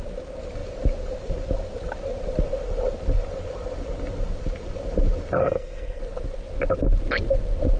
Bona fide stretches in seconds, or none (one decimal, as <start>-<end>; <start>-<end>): 0.0-5.4; 6.0-7.8